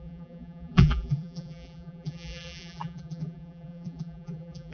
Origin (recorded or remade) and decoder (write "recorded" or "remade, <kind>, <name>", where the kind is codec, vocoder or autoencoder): remade, vocoder, BigVGAN v2